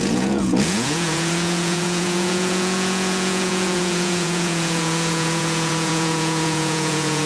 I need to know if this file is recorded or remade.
remade